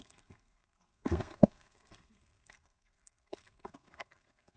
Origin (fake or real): fake